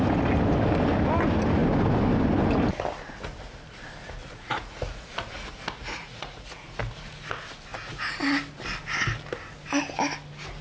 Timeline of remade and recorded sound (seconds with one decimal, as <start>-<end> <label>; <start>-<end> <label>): 0.0-4.2 recorded; 4.2-5.1 remade; 5.1-5.8 recorded; 5.8-6.8 remade; 6.8-10.6 recorded